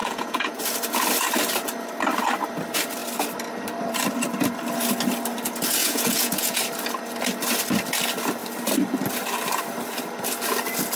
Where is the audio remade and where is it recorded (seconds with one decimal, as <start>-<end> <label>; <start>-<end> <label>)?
0.0-0.6 remade; 0.6-5.8 recorded; 5.8-6.6 remade; 6.6-11.0 recorded